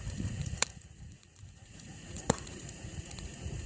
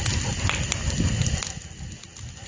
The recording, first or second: second